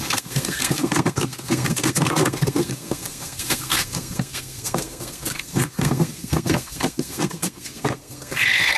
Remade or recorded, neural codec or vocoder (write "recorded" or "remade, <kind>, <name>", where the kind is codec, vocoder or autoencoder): remade, codec, SNAC